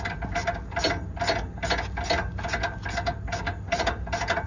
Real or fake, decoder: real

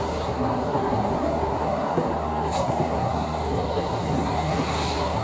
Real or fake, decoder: fake, codec, SNAC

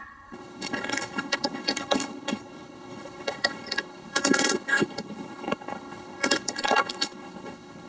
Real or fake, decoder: fake, codec, HILCodec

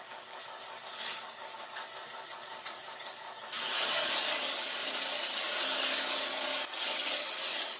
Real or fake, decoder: fake, codec, DAC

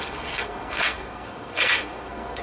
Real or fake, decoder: fake, codec, SNAC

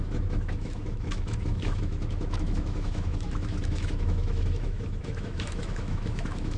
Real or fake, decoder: fake, autoencoder, DAC-VAE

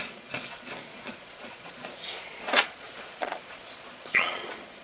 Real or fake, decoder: fake, vocoder, Vocos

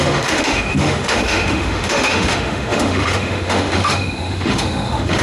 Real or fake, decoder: fake, autoencoder, DAC-VAE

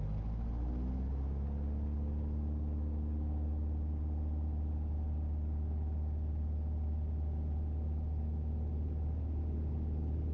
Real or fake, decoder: real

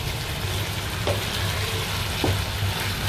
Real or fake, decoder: real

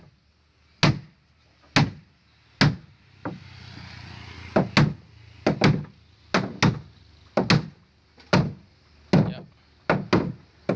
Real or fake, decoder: real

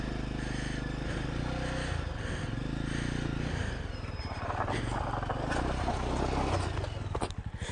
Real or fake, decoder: real